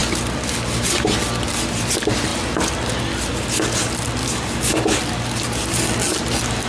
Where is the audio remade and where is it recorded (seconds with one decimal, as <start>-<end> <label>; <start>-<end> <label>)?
0.0-4.2 recorded; 4.2-5.0 remade; 5.0-6.7 recorded